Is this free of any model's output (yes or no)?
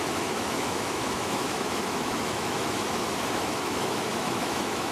no